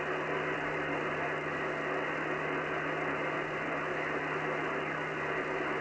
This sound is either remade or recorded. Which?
remade